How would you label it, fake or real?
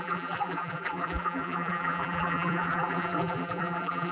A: fake